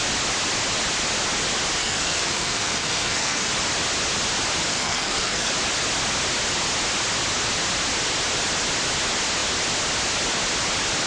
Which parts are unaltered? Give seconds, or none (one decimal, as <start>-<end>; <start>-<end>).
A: 0.0-1.8; 3.5-4.7; 5.5-11.1